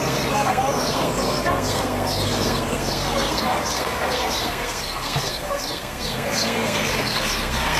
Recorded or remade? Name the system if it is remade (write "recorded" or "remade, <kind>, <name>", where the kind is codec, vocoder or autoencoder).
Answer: remade, codec, SNAC